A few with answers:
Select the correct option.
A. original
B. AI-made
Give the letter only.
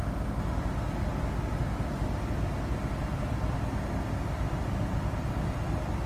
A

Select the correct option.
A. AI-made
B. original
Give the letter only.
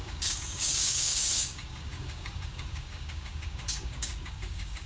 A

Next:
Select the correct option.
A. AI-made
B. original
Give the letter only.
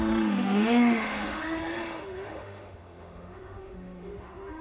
A